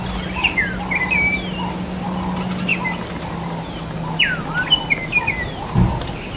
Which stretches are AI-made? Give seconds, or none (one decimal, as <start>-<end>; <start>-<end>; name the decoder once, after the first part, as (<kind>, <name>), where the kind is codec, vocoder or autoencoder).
none